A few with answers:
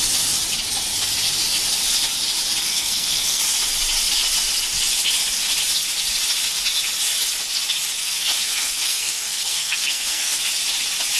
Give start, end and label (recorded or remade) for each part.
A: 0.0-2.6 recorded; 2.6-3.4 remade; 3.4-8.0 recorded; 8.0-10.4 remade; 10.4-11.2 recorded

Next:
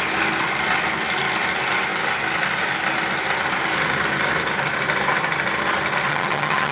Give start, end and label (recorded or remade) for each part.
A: 0.0-6.1 recorded; 6.1-6.7 remade

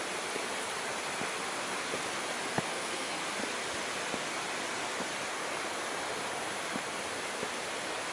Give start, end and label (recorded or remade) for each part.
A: 0.0-2.7 recorded; 2.7-3.2 remade; 3.2-8.1 recorded

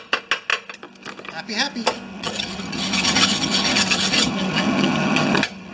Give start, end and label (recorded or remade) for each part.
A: 0.0-2.1 recorded; 2.1-5.7 remade

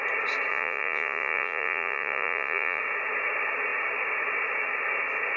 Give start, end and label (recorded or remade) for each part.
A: 0.0-0.5 recorded; 0.5-2.8 remade; 2.8-5.4 recorded

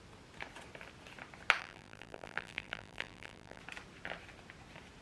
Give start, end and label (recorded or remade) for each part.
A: 0.0-1.6 recorded; 1.6-3.6 remade; 3.6-5.0 recorded